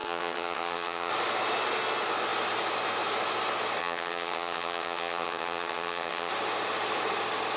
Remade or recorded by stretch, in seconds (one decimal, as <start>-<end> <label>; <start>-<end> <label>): 0.0-1.1 remade; 1.1-3.8 recorded; 3.8-6.3 remade; 6.3-7.6 recorded